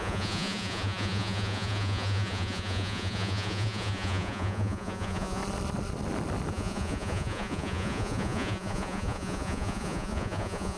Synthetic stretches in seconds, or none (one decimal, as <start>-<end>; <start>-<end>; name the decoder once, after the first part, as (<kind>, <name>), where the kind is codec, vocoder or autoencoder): 0.0-5.4 (vocoder, Vocos); 6.5-10.8